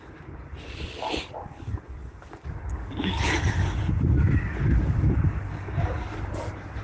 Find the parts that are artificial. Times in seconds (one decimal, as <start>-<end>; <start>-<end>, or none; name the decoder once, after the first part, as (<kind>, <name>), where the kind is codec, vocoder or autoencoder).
0.0-6.8 (codec, DAC)